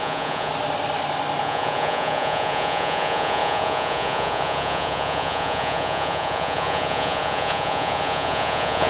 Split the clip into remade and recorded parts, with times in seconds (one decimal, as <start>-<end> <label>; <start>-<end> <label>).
0.0-0.5 remade; 0.5-1.4 recorded; 1.4-8.9 remade